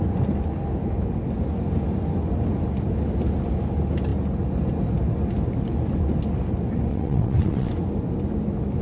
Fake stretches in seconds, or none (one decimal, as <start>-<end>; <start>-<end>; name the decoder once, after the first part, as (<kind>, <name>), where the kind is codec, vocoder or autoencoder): 6.9-7.7 (vocoder, WaveNeXt)